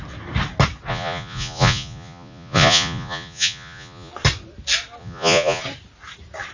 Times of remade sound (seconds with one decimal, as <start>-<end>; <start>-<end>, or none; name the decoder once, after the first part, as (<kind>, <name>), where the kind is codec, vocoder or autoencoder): 0.9-4.1 (vocoder, Vocos); 5.0-5.6